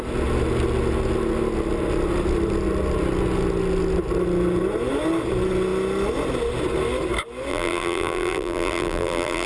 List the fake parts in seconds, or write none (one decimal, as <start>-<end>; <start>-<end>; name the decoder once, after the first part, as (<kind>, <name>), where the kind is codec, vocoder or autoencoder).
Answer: 7.5-9.5 (vocoder, BigVGAN v2)

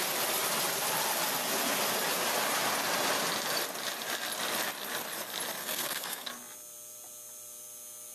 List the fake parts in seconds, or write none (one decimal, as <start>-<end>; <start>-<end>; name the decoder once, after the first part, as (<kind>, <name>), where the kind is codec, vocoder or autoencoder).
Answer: 5.6-6.3 (codec, SNAC)